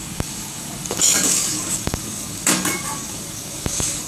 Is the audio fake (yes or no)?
yes